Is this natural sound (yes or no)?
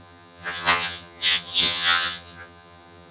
no